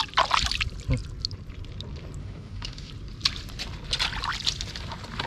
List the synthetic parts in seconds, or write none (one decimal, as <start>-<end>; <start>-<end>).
2.2-2.9